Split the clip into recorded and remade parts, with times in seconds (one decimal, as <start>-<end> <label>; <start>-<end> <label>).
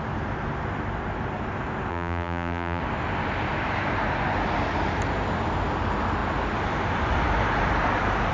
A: 0.0-1.9 recorded; 1.9-2.8 remade; 2.8-8.3 recorded